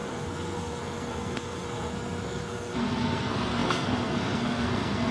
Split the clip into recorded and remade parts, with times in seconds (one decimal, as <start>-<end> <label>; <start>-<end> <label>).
0.0-5.1 remade